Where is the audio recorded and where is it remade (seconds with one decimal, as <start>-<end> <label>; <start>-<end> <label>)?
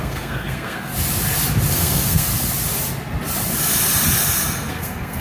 0.0-0.9 remade; 0.9-1.7 recorded; 1.7-2.3 remade; 2.3-4.7 recorded; 4.7-5.2 remade